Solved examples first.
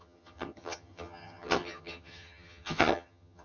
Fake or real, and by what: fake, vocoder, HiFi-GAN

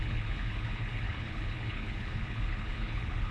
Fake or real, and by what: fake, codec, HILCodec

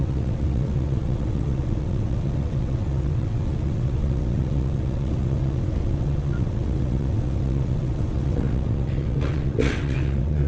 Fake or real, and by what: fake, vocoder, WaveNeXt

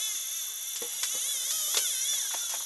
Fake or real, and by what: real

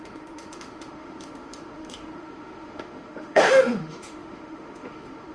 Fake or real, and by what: fake, autoencoder, DAC-VAE